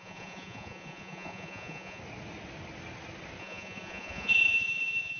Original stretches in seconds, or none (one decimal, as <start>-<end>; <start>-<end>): 2.0-3.4